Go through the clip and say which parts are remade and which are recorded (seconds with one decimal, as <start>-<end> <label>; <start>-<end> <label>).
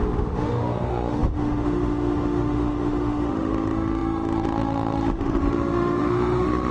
0.0-6.7 remade